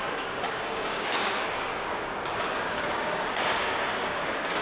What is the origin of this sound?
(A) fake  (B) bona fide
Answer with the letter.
A